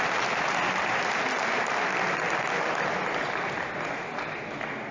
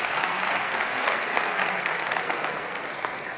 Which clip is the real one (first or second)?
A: first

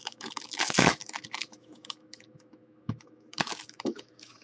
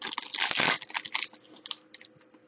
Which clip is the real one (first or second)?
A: second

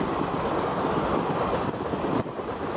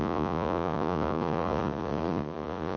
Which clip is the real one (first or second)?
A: first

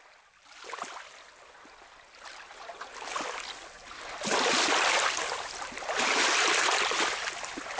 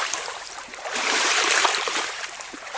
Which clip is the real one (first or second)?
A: first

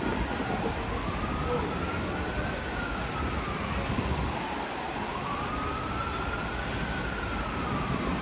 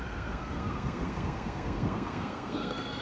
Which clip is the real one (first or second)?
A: first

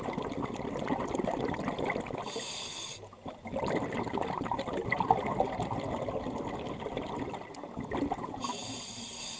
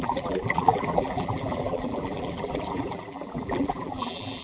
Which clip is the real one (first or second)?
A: first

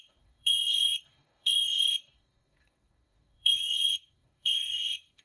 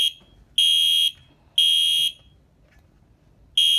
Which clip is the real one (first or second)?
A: second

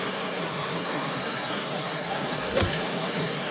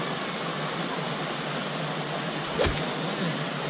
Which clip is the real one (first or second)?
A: second